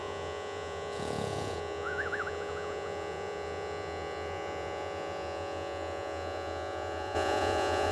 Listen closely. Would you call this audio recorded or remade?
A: remade